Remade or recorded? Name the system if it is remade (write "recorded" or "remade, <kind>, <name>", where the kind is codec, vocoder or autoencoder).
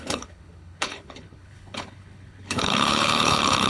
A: remade, codec, HILCodec